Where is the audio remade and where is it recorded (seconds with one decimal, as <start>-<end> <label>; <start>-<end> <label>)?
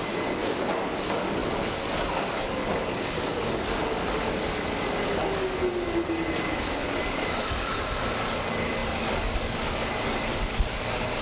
0.0-11.2 remade